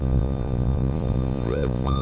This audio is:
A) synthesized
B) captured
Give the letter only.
A